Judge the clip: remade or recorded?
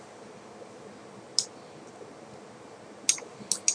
recorded